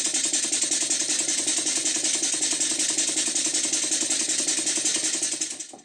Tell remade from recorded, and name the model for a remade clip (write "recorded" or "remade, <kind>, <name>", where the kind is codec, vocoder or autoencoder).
recorded